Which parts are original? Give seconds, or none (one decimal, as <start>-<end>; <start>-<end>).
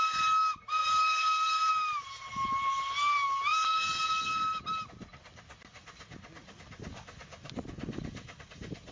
0.0-0.8; 1.7-8.9